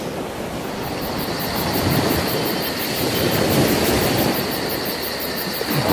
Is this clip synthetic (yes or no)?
no